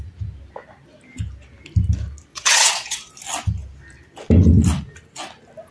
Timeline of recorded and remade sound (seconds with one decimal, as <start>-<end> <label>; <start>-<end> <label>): 0.0-2.3 recorded; 2.3-3.1 remade; 3.1-5.7 recorded